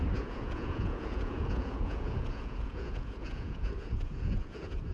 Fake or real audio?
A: fake